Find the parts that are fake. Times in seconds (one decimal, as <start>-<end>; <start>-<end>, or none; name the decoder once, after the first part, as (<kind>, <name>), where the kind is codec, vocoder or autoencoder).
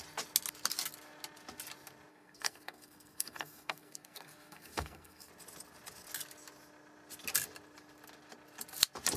2.1-5.3 (codec, SNAC)